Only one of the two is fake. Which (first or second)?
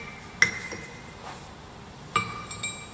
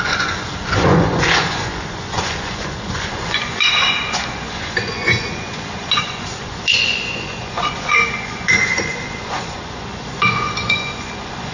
second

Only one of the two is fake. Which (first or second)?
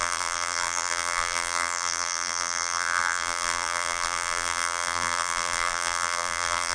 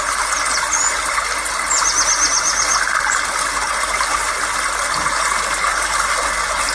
first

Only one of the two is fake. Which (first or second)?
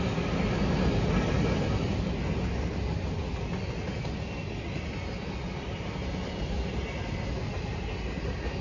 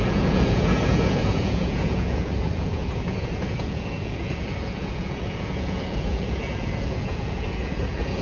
second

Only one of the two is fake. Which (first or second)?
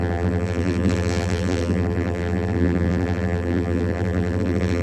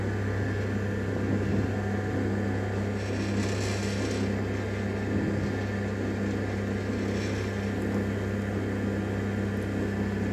first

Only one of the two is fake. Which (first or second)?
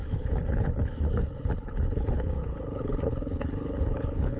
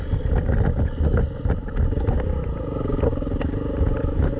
first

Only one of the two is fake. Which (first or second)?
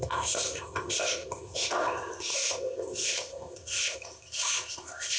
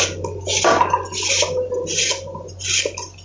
first